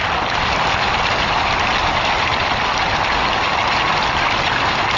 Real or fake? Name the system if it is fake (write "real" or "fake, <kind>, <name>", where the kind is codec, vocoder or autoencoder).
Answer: real